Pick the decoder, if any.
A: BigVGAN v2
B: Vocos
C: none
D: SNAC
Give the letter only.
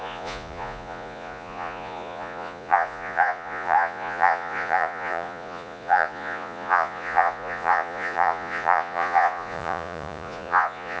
B